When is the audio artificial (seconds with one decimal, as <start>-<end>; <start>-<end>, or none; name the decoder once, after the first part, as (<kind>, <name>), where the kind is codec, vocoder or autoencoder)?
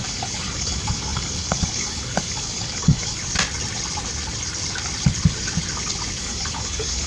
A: 0.0-3.2 (codec, DAC); 6.2-7.1